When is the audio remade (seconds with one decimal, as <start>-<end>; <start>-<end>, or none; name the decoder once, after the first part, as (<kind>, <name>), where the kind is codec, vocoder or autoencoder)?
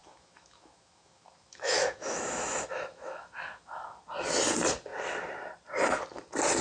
0.0-4.0 (autoencoder, DAC-VAE)